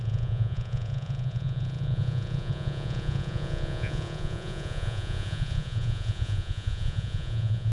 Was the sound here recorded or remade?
remade